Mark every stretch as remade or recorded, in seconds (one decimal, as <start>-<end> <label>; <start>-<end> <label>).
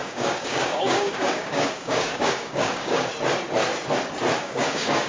0.0-3.1 remade; 3.1-4.4 recorded; 4.4-5.1 remade